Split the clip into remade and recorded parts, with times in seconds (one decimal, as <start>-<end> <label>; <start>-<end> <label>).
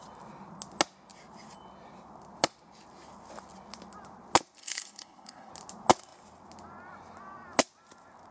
0.0-4.6 recorded; 4.6-5.5 remade; 5.5-8.3 recorded